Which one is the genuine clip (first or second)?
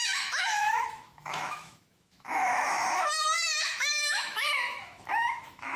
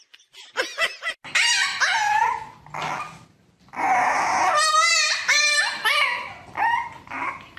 second